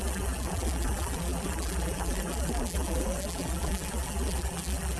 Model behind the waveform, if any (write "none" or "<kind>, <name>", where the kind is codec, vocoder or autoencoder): vocoder, BigVGAN v2